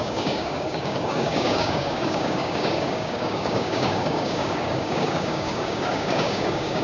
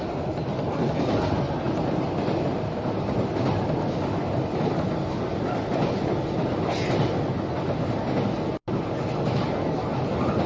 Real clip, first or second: second